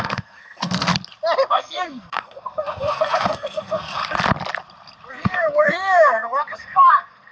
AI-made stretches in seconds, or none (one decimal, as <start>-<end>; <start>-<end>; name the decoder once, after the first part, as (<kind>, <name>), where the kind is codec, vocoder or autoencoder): 0.0-0.9 (codec, SNAC); 1.5-4.0; 5.1-7.3